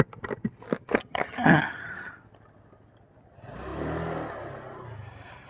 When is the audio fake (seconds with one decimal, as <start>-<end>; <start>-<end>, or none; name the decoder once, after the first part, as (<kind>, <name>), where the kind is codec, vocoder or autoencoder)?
1.0-2.1 (vocoder, HiFi-GAN)